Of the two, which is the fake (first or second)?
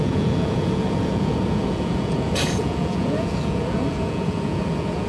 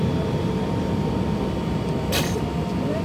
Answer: first